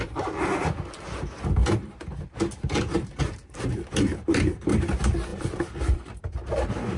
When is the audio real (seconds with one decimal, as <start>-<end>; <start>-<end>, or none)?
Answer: none